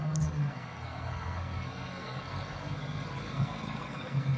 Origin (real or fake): fake